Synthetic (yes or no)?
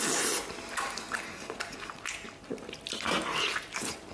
no